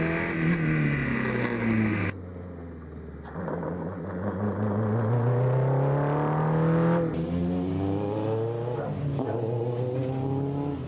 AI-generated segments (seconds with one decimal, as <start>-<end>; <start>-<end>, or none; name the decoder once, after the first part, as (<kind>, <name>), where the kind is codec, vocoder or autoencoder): none